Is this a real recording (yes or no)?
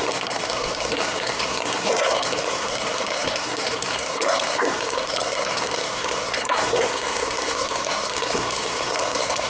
no